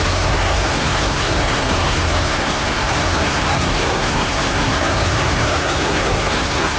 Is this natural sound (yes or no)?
no